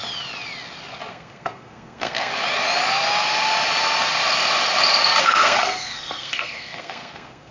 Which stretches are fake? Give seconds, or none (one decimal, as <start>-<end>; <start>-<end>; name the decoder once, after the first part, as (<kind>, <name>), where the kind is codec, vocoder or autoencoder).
1.1-2.3 (codec, SNAC); 5.2-7.5

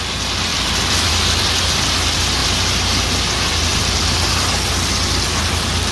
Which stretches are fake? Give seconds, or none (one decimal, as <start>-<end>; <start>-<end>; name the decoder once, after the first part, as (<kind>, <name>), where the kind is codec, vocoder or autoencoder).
0.5-1.4 (vocoder, BigVGAN v2)

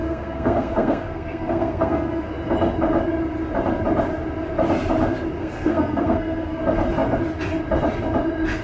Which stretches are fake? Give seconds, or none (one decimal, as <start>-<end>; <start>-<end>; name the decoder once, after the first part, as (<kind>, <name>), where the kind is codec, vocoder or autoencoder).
0.0-2.3 (codec, SNAC); 5.4-6.6

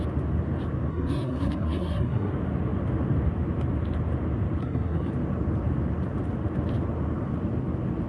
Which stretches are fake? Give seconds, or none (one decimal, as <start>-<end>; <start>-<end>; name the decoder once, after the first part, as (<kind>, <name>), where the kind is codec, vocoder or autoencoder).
0.9-2.3 (codec, SNAC); 4.6-5.1

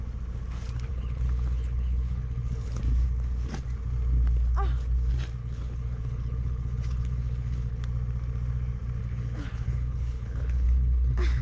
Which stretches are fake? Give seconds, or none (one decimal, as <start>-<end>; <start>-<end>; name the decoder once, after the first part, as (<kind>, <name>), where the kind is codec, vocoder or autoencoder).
0.9-2.8 (codec, HILCodec); 5.4-7.8; 9.0-11.4

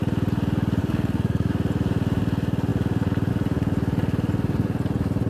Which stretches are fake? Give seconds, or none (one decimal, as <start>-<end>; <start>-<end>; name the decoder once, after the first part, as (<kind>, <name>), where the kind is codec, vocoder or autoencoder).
0.8-1.5 (codec, SNAC)

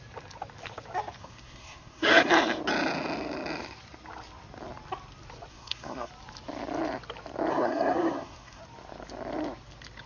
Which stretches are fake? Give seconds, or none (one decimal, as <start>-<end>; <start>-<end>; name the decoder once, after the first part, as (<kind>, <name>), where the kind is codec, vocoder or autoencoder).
1.2-2.3 (codec, SNAC); 5.5-6.1; 7.5-8.6